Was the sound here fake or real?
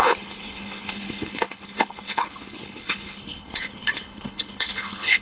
fake